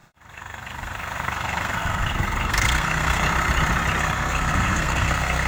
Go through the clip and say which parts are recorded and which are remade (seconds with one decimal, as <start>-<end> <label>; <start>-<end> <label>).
0.0-3.2 remade; 3.2-4.0 recorded; 4.0-5.5 remade